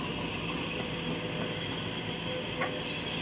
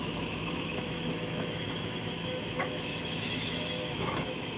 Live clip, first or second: first